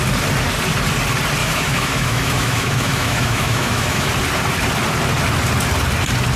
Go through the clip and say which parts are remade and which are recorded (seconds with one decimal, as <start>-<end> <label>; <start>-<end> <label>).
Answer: 0.0-1.4 recorded; 1.4-4.1 remade; 4.1-6.4 recorded